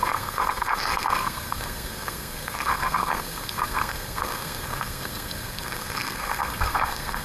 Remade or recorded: remade